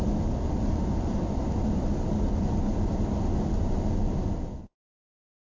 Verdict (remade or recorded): recorded